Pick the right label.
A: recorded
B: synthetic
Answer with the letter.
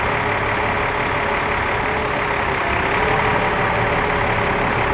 A